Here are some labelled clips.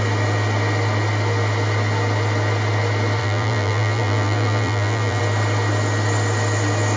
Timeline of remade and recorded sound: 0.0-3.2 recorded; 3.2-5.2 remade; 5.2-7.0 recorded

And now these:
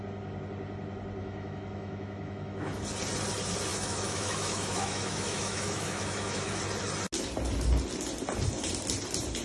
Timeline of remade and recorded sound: 0.0-1.2 recorded; 1.2-2.8 remade; 2.8-3.7 recorded; 3.7-6.6 remade; 6.6-9.4 recorded

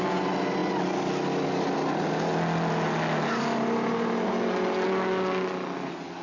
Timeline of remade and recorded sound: 0.0-6.2 recorded

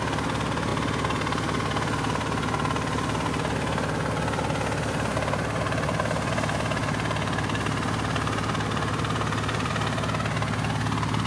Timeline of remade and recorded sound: 0.0-6.8 recorded; 6.8-9.7 remade; 9.7-11.3 recorded

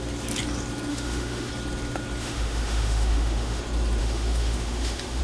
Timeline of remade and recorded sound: 0.0-0.9 recorded; 0.9-1.5 remade; 1.5-2.2 recorded; 2.2-3.6 remade; 3.6-4.0 recorded; 4.0-5.2 remade

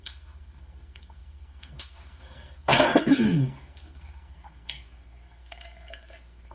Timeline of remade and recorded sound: 0.0-6.5 remade

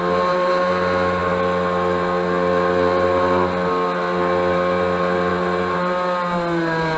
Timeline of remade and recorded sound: 0.0-7.0 recorded